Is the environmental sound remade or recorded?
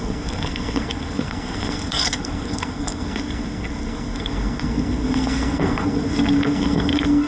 remade